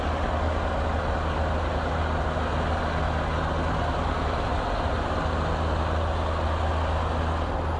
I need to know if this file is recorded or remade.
recorded